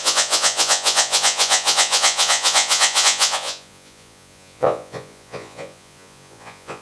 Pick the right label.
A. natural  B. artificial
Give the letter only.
B